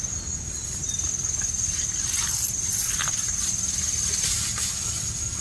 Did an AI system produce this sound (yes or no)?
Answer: no